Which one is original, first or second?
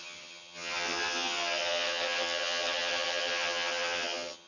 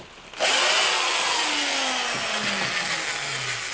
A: second